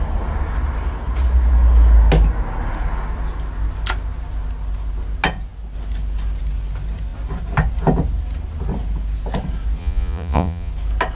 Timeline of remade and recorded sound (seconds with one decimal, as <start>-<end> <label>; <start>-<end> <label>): 0.0-9.8 recorded; 9.8-10.7 remade; 10.7-11.2 recorded